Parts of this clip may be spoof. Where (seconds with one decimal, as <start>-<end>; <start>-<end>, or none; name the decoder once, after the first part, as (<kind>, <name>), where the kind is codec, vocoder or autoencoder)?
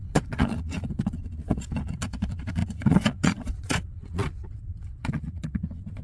0.0-6.0 (vocoder, Vocos)